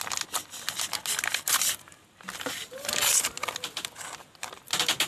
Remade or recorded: recorded